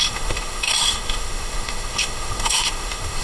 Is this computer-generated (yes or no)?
yes